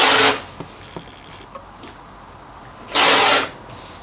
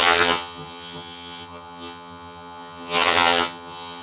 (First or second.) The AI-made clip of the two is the second